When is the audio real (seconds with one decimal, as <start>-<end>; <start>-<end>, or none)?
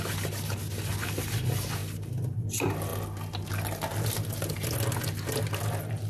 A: 0.0-6.1